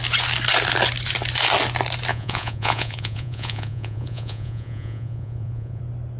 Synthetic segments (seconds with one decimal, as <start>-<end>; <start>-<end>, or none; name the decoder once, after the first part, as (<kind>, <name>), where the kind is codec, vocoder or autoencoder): 2.1-5.8 (vocoder, Vocos)